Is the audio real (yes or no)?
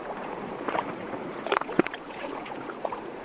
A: no